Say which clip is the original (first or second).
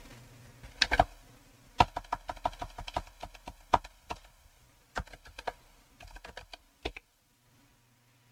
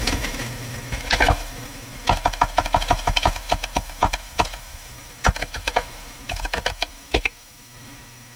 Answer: first